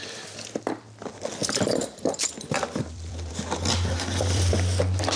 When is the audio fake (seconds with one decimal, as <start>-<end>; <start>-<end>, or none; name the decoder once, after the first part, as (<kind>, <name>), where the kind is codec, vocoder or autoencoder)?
1.4-4.5 (vocoder, BigVGAN v2)